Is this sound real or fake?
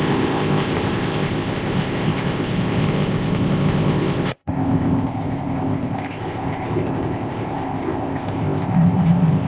fake